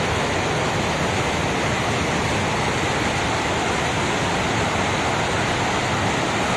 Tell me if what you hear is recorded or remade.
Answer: recorded